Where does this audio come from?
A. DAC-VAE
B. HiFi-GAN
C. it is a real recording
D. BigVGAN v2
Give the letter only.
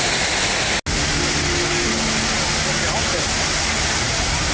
C